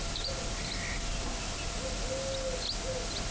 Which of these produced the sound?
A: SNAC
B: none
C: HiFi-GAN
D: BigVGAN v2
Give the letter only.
B